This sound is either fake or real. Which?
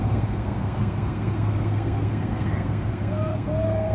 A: fake